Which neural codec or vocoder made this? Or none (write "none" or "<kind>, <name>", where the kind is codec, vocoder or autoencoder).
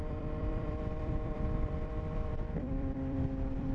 vocoder, BigVGAN v2